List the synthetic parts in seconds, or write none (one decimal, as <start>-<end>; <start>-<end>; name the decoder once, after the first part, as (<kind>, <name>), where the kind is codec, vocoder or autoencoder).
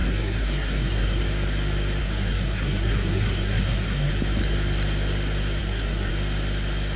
0.0-1.2 (codec, SNAC); 2.0-4.1; 5.6-6.1